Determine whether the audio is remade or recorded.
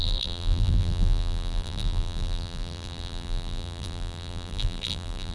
remade